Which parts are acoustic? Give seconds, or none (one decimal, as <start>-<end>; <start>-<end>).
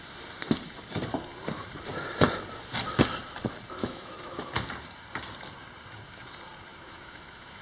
0.0-3.8; 4.5-6.7